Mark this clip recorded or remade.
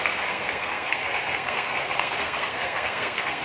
remade